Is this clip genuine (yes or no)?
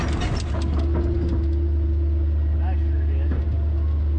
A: yes